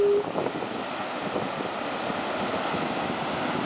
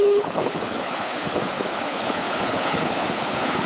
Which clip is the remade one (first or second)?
second